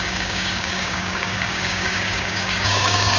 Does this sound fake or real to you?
fake